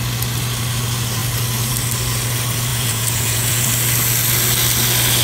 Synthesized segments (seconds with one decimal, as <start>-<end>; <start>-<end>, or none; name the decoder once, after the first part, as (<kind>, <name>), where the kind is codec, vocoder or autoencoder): 2.7-3.7 (vocoder, Vocos)

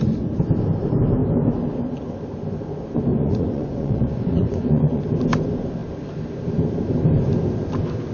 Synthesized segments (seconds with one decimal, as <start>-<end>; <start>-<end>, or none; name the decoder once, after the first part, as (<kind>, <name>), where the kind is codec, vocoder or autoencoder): 3.1-5.0 (vocoder, Vocos)

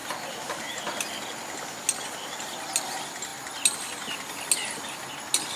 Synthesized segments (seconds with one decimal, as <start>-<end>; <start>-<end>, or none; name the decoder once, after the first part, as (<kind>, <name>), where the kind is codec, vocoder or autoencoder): none